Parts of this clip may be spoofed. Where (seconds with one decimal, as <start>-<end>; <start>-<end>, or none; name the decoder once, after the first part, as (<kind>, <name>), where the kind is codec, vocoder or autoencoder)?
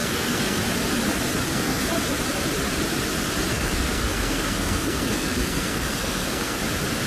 0.0-0.6 (codec, SNAC); 1.4-1.9; 3.5-6.6